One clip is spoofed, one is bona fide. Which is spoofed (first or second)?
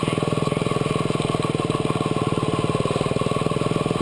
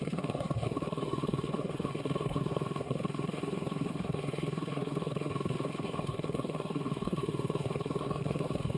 second